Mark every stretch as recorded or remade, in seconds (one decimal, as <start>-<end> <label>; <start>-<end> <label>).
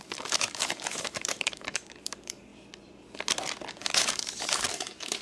0.0-2.5 remade; 2.5-3.7 recorded; 3.7-5.2 remade